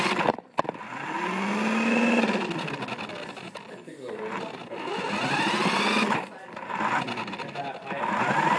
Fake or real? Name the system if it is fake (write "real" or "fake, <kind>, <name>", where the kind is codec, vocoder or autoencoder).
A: real